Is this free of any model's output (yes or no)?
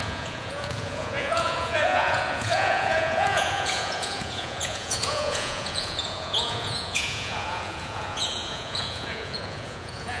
no